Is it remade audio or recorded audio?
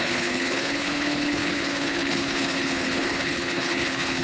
remade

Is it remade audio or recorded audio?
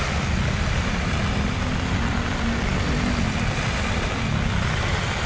recorded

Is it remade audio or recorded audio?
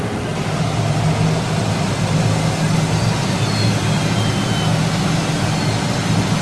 recorded